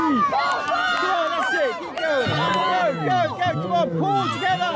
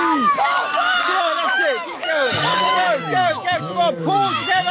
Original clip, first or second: first